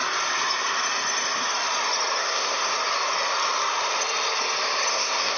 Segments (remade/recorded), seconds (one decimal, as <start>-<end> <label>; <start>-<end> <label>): 0.0-2.2 recorded; 2.2-2.7 remade; 2.7-4.9 recorded; 4.9-5.4 remade